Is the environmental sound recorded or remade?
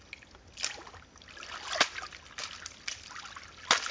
recorded